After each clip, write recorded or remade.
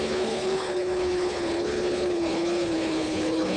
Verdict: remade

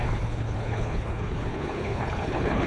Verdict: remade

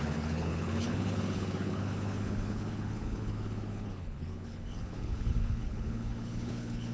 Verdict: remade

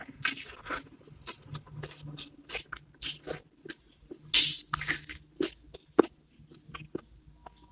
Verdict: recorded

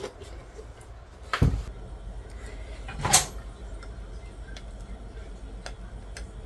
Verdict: recorded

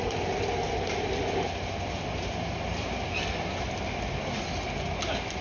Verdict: recorded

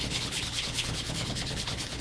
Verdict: remade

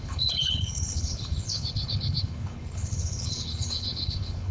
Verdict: remade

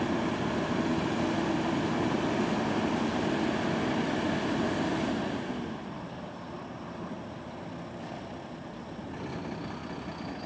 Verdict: recorded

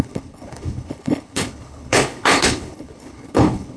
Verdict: remade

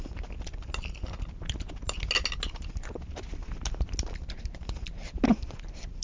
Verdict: recorded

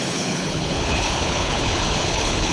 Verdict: remade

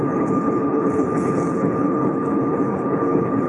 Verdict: remade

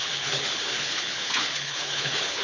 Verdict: remade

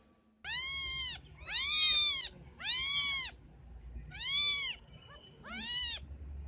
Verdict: recorded